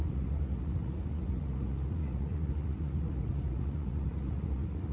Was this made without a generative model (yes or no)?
no